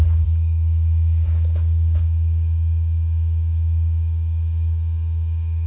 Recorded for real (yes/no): no